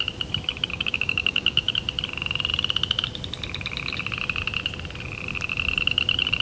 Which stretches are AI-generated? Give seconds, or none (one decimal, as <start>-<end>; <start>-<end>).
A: 0.7-1.7